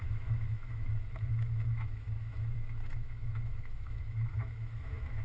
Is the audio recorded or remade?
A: remade